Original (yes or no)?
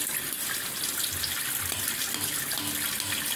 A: yes